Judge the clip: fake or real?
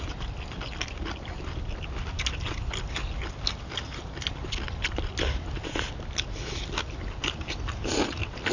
real